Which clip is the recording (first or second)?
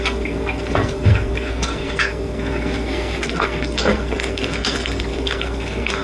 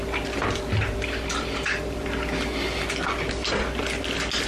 second